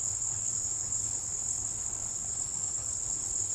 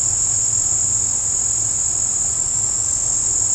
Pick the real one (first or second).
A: second